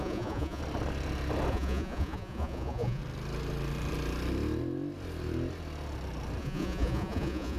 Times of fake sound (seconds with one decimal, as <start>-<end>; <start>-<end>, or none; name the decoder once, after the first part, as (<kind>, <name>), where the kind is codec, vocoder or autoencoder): 0.0-0.6 (vocoder, Vocos); 1.5-3.0; 6.4-7.6